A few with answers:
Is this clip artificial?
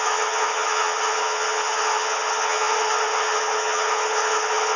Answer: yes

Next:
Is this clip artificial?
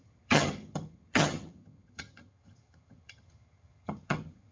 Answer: yes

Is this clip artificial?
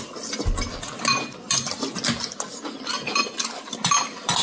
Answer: no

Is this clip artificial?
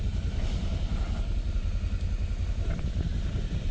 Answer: no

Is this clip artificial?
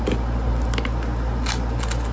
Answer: no